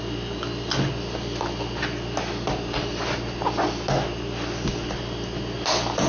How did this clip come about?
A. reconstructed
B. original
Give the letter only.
B